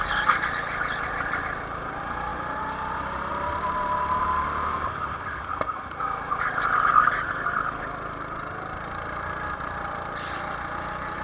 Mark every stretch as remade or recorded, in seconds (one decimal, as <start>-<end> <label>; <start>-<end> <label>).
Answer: 0.0-11.2 recorded